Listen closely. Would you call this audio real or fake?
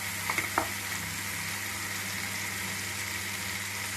real